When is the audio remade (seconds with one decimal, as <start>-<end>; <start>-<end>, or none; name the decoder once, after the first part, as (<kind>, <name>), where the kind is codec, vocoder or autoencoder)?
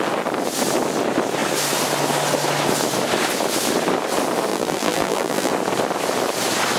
4.5-5.5 (vocoder, BigVGAN v2)